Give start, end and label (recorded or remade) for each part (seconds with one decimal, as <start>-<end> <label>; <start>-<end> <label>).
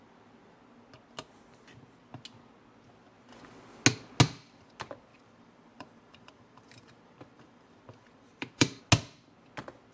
0.0-5.1 recorded; 5.1-8.8 remade; 8.8-9.9 recorded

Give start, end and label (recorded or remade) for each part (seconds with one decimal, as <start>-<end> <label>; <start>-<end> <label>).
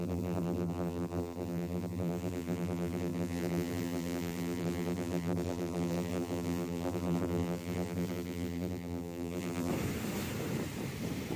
0.0-9.7 remade; 9.7-11.4 recorded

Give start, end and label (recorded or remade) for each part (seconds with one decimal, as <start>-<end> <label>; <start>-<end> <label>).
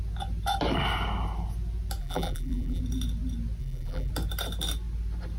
0.0-2.0 recorded; 2.0-2.8 remade; 2.8-3.6 recorded; 3.6-4.1 remade; 4.1-5.4 recorded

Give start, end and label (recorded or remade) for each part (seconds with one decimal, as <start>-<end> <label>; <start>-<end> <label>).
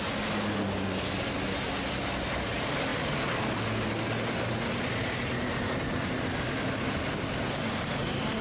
0.0-8.4 recorded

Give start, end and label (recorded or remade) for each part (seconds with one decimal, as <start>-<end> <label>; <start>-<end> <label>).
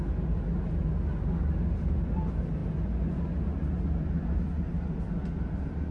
0.0-5.9 recorded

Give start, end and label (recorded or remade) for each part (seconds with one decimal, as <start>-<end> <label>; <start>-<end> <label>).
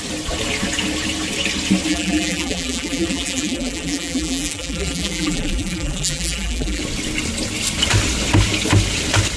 0.0-1.9 recorded; 1.9-6.8 remade; 6.8-9.4 recorded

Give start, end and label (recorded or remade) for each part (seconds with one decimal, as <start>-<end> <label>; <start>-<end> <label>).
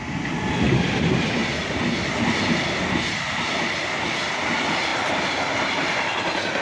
0.0-6.6 recorded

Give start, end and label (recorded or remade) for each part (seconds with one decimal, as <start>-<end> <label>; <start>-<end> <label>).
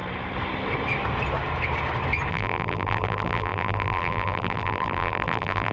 0.0-2.3 recorded; 2.3-5.7 remade